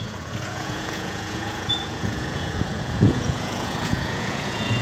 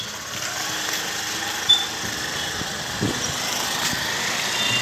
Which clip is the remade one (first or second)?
first